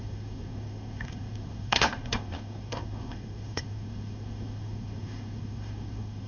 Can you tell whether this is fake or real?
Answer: fake